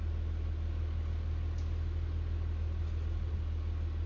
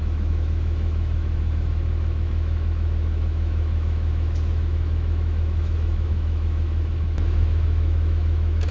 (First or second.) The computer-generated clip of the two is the second